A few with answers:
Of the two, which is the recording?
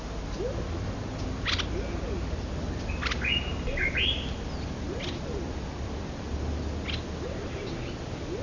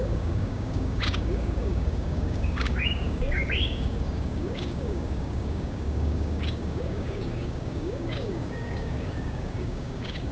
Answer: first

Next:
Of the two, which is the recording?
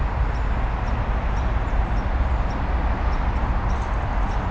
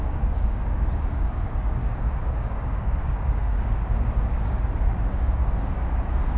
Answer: first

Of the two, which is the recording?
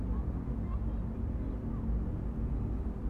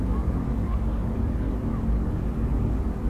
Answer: first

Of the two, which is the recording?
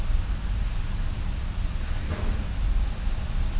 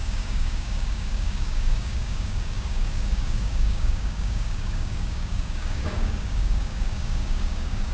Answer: first